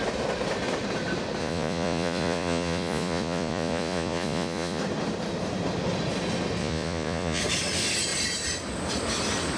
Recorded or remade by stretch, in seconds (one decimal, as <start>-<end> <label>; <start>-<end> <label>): 0.0-1.4 recorded; 1.4-4.8 remade; 4.8-6.6 recorded; 6.6-7.4 remade; 7.4-9.6 recorded